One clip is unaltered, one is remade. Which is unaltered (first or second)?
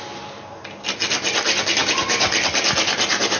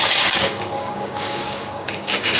first